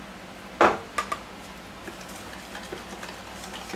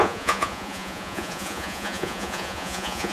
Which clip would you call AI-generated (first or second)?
second